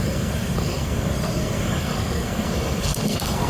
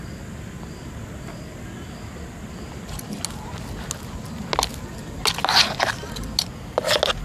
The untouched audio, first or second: second